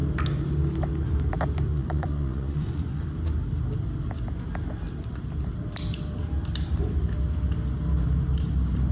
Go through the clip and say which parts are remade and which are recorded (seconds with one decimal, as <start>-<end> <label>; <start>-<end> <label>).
0.0-1.7 recorded; 1.7-3.0 remade; 3.0-8.9 recorded